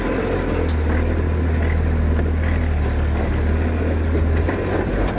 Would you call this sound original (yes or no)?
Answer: yes